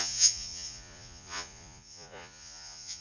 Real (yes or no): no